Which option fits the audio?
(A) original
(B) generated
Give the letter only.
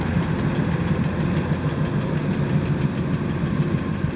A